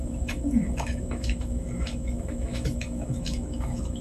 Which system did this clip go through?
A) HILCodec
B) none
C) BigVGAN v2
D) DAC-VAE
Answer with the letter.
D